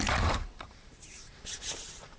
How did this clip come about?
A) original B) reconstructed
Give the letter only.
B